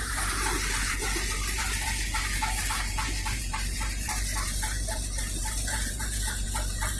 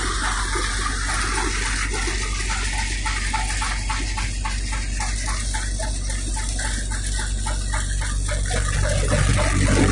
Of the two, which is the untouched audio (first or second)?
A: second